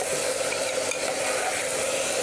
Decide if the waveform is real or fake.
real